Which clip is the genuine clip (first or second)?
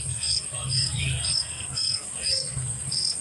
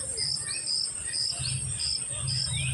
second